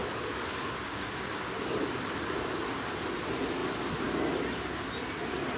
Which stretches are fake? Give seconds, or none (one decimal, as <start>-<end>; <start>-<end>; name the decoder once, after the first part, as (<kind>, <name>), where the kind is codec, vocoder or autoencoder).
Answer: none

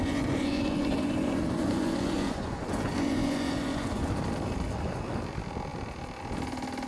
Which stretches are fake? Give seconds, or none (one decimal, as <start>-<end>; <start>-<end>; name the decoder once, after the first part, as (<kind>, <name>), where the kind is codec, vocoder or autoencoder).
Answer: 0.0-4.1 (vocoder, Vocos)

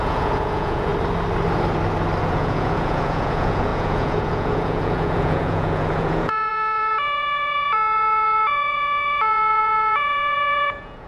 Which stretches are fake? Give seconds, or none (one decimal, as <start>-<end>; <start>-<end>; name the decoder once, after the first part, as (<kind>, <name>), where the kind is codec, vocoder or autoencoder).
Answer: 0.0-0.9 (vocoder, Vocos); 2.2-11.1

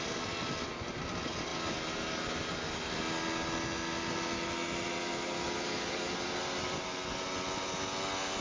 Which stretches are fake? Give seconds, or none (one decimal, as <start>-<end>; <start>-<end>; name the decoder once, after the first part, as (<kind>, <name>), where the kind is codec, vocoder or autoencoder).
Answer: none

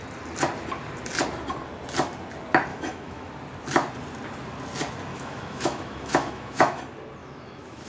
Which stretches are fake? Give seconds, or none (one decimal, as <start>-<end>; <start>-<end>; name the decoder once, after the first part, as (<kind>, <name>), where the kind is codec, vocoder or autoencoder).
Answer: 2.7-3.3 (autoencoder, DAC-VAE); 5.1-6.8; 7.2-7.9

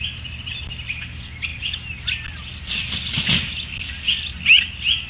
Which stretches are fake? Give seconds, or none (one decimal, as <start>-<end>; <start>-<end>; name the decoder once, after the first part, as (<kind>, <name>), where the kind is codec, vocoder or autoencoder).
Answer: none